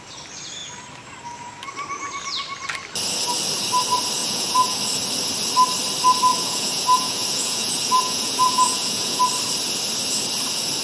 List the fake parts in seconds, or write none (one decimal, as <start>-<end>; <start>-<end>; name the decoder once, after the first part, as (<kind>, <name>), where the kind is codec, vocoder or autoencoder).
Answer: 4.2-4.8 (vocoder, Vocos); 6.3-9.2